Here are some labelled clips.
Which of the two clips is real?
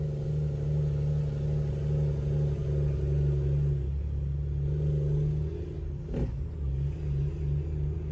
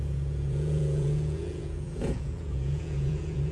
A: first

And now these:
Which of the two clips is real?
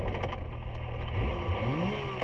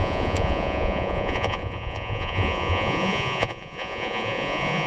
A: first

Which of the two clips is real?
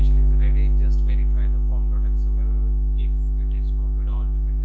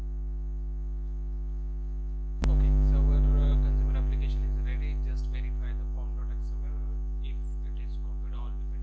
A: second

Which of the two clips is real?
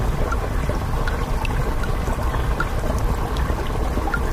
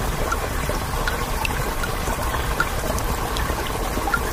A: first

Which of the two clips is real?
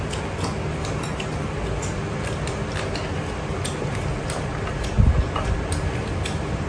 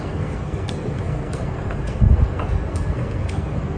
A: first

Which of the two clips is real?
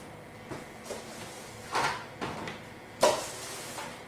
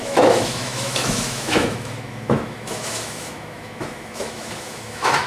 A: first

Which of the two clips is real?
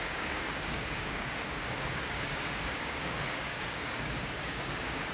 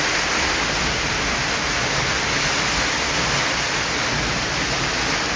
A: second